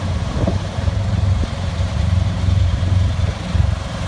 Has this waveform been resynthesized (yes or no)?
yes